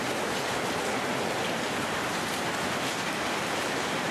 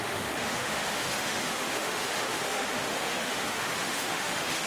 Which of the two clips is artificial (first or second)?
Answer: second